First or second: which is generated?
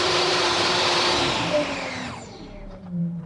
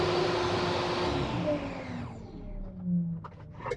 first